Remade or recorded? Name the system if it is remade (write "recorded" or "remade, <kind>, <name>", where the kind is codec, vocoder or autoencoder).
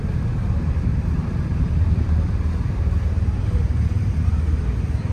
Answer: recorded